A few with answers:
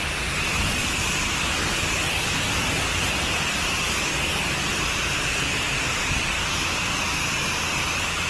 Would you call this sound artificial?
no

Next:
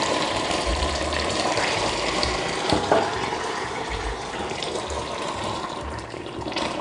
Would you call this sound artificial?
yes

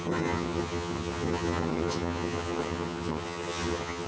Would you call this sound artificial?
yes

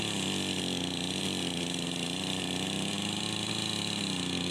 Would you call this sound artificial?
no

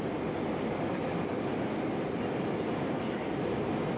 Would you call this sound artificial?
no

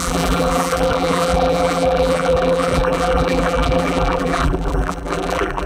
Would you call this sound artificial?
yes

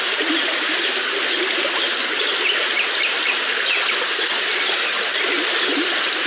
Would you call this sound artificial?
no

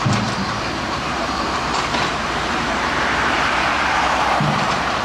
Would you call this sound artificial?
yes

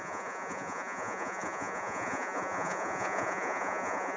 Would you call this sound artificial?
yes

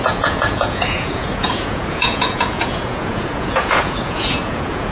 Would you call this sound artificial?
yes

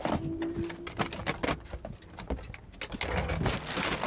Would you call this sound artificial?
no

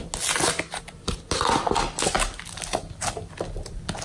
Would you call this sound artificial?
no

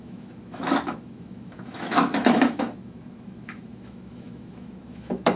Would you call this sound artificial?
yes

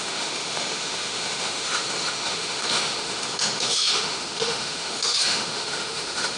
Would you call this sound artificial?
yes